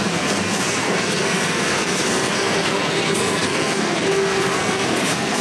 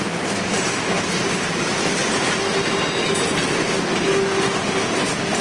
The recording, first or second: second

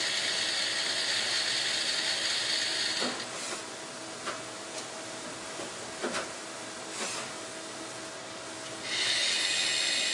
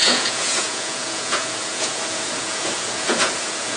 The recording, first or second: first